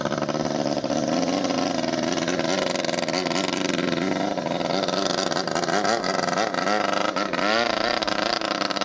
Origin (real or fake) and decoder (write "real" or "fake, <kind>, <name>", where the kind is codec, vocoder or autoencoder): real